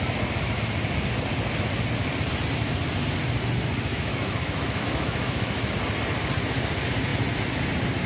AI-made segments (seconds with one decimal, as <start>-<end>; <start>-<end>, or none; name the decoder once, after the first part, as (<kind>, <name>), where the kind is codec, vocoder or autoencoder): 3.9-5.7 (autoencoder, DAC-VAE)